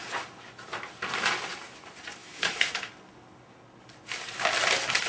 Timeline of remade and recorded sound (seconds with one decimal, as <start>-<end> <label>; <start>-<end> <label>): 0.0-2.2 recorded; 2.2-2.9 remade; 2.9-5.1 recorded